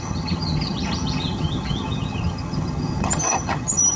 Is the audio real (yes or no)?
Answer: no